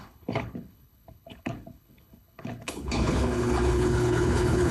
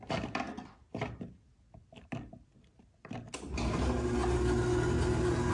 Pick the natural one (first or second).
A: second